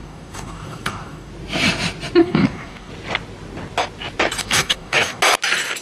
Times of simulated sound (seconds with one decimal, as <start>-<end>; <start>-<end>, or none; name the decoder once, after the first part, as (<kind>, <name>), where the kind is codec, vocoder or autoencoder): 0.0-1.3 (codec, DAC); 2.2-2.9; 4.4-5.2